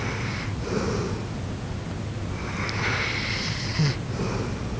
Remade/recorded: recorded